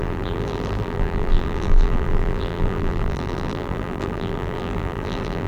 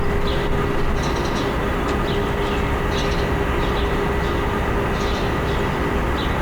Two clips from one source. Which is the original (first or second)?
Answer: second